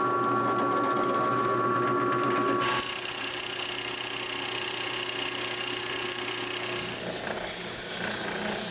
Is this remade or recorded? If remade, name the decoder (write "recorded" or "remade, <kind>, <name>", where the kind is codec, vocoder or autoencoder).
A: recorded